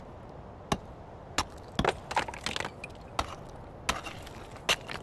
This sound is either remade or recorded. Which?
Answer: recorded